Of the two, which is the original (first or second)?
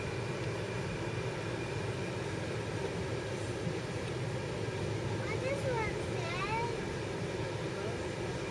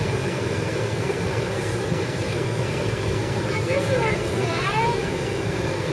first